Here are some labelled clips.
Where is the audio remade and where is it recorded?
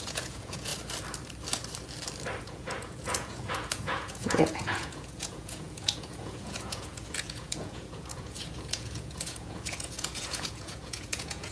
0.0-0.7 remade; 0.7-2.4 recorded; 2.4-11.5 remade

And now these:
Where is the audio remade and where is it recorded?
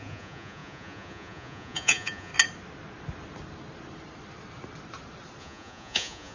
0.0-2.3 remade; 2.3-5.4 recorded; 5.4-6.3 remade